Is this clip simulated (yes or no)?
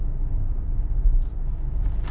no